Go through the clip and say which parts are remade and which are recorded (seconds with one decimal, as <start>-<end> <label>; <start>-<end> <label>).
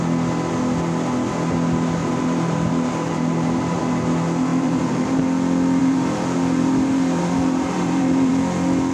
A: 0.0-2.0 recorded; 2.0-3.8 remade; 3.8-4.5 recorded; 4.5-5.2 remade; 5.2-5.8 recorded; 5.8-8.3 remade; 8.3-8.9 recorded